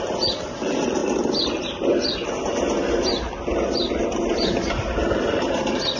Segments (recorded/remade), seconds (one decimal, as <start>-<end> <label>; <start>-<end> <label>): 0.0-6.0 recorded